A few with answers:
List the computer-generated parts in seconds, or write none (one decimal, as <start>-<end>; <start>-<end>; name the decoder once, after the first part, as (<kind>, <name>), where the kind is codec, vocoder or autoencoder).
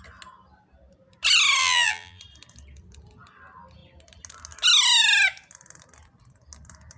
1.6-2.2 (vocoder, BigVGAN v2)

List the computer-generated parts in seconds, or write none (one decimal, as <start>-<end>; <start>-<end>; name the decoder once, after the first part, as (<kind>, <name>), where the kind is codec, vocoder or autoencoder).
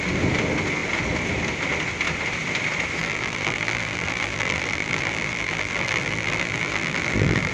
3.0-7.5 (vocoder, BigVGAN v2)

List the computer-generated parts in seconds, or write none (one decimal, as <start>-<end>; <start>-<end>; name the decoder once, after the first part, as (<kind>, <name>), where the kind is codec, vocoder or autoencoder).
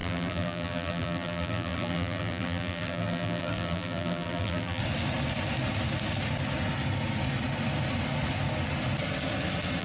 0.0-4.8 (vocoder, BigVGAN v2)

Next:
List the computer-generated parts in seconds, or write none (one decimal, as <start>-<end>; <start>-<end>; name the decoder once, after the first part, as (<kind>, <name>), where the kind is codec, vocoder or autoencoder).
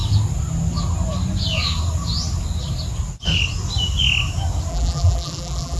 4.7-5.8 (vocoder, BigVGAN v2)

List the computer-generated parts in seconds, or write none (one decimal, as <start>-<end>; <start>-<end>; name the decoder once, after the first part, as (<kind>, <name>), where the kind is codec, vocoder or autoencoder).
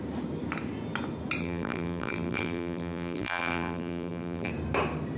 1.4-4.5 (vocoder, BigVGAN v2)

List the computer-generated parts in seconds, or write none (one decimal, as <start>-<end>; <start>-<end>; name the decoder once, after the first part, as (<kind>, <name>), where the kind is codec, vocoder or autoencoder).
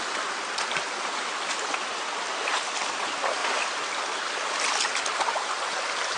0.0-3.4 (vocoder, BigVGAN v2)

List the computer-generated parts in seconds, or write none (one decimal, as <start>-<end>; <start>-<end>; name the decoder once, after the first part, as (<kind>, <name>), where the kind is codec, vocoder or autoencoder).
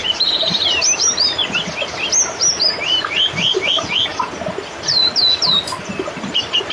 0.0-1.4 (vocoder, BigVGAN v2); 2.8-6.7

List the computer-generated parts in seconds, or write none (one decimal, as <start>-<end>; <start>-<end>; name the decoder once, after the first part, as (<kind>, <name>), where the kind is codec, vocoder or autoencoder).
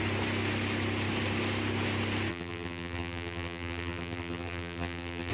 2.3-5.3 (vocoder, BigVGAN v2)